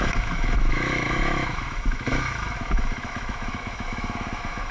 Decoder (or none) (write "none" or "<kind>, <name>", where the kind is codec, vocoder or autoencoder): autoencoder, DAC-VAE